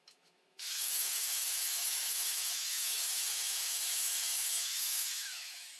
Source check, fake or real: fake